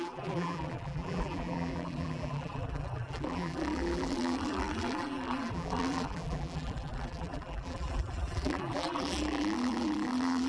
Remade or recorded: remade